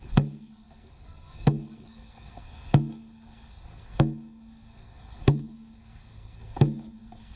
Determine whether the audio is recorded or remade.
remade